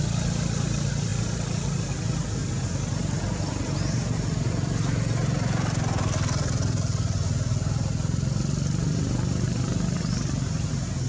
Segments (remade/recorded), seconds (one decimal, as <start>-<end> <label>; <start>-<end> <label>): 0.0-11.1 recorded